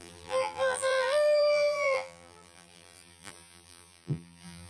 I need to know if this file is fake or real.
fake